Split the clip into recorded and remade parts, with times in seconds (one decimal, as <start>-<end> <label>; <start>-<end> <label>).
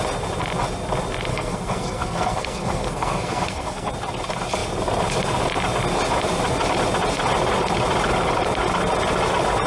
0.0-1.3 recorded; 1.3-3.9 remade; 3.9-9.7 recorded